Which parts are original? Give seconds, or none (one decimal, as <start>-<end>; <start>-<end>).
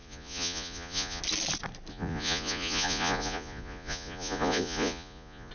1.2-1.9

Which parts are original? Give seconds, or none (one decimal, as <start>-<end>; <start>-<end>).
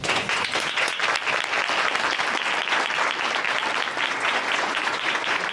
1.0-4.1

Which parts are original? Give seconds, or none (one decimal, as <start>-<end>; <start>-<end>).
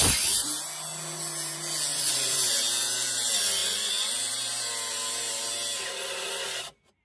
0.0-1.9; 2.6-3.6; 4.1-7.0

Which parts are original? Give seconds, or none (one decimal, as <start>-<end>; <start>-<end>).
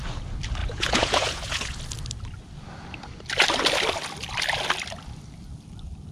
0.0-0.6; 1.8-6.1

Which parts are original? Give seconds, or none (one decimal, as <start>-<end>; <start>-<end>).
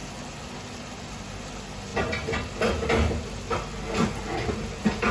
0.0-5.1